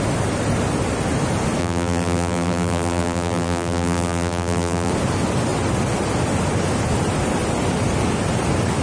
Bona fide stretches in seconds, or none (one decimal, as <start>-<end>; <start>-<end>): 0.0-1.6; 4.9-8.8